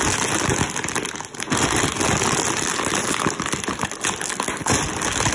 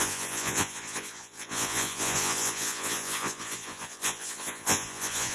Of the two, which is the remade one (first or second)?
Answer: second